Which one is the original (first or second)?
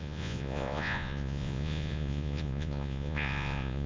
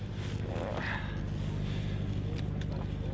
second